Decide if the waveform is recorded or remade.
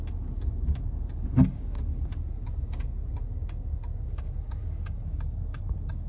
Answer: remade